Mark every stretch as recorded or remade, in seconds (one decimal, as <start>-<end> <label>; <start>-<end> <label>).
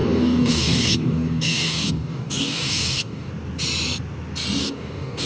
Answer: 0.0-3.3 remade; 3.3-4.6 recorded; 4.6-5.3 remade